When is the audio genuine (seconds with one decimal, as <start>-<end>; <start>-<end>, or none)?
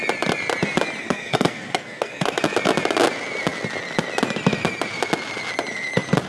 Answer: 0.0-1.0; 2.4-6.3